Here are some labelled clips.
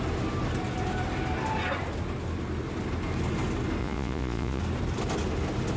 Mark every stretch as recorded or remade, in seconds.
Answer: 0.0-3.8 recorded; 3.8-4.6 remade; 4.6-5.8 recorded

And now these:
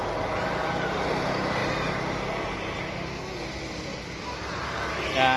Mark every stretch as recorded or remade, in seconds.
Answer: 0.0-5.4 recorded